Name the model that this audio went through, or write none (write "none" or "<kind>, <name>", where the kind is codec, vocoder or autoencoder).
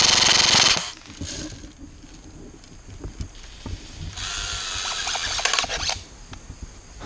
none